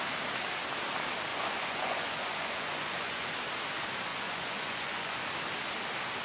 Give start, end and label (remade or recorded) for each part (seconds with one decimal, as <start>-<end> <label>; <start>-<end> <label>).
0.0-1.3 recorded; 1.3-3.4 remade; 3.4-4.1 recorded; 4.1-5.2 remade; 5.2-6.2 recorded